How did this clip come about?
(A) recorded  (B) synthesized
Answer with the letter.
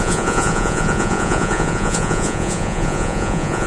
B